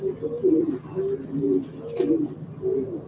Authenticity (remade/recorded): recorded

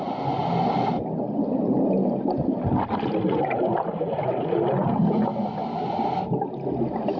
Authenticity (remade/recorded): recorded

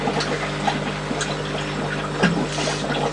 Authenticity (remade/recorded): recorded